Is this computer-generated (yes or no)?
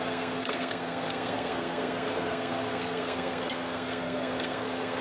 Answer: yes